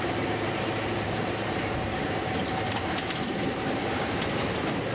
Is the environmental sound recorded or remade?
remade